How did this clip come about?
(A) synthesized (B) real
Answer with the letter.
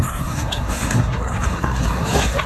A